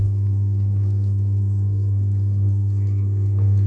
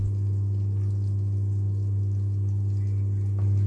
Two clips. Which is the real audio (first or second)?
second